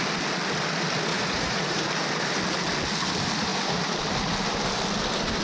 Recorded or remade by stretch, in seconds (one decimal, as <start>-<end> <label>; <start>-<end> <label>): 0.0-1.1 recorded; 1.1-1.8 remade; 1.8-5.4 recorded